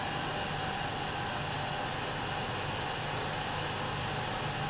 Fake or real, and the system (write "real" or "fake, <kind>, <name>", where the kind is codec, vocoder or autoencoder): real